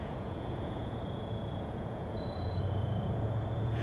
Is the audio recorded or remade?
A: remade